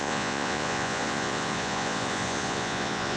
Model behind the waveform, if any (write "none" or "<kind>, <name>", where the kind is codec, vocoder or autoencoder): vocoder, Vocos